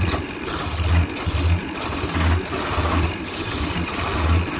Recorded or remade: recorded